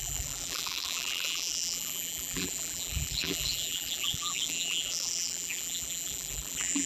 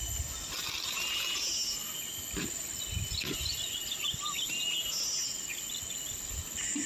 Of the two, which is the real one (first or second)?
second